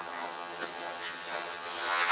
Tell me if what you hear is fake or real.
fake